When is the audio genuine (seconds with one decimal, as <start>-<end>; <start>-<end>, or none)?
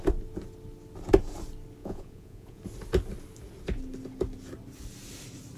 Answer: 0.0-1.8; 2.6-5.6